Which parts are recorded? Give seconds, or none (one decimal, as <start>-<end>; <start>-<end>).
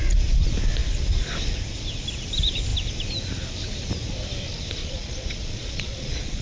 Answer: 0.0-4.8